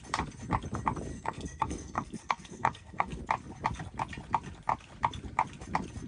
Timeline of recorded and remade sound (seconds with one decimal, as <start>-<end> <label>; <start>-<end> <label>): 0.0-1.1 recorded; 1.1-3.2 remade; 3.2-6.1 recorded